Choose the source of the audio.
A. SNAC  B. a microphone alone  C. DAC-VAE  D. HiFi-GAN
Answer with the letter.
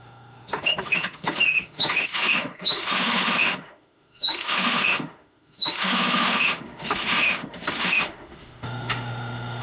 C